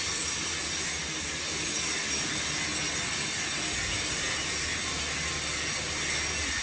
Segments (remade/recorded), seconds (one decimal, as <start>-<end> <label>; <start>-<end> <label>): 0.0-6.6 recorded